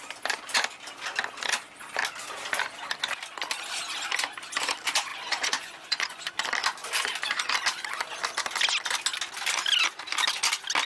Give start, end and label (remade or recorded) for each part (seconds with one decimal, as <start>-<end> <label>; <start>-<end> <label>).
0.0-5.1 recorded; 5.1-6.3 remade; 6.3-10.9 recorded